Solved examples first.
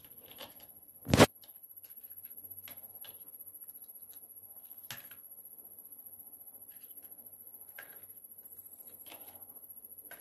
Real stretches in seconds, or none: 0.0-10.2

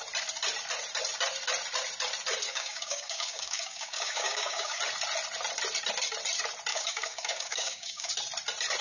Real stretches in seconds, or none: 0.0-2.5; 4.8-6.7; 8.1-8.8

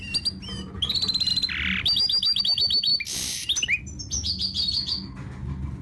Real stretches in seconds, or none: 0.0-2.9; 3.8-5.8

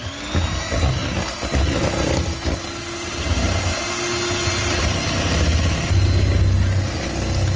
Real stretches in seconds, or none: 0.0-7.6

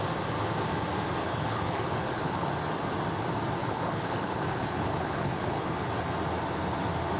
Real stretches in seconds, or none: 0.0-1.2; 2.5-3.6; 6.0-7.2

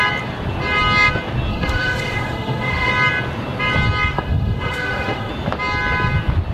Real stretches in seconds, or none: 0.0-1.5; 2.9-4.1; 5.3-6.5

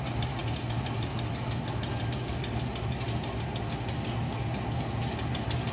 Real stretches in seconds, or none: 0.0-5.7

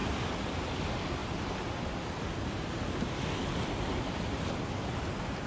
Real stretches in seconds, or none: 0.0-5.5